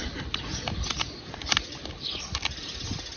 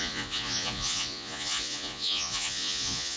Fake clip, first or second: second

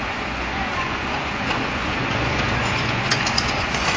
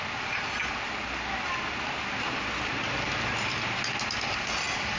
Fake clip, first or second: first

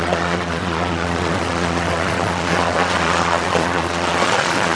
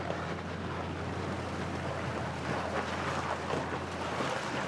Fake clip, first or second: first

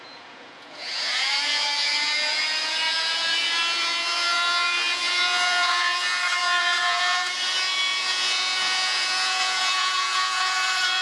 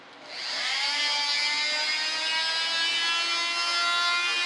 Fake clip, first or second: first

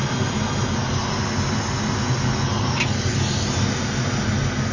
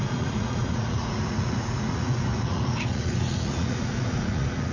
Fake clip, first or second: second